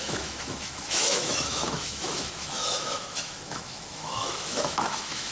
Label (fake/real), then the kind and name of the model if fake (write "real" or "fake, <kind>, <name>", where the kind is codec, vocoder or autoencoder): fake, autoencoder, DAC-VAE